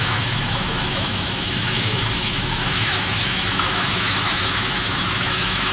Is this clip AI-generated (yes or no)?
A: yes